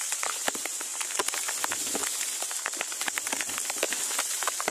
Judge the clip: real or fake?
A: real